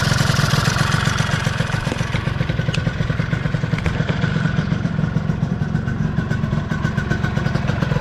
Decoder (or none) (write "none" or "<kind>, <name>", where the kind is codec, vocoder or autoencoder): vocoder, BigVGAN v2